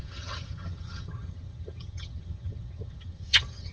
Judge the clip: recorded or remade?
remade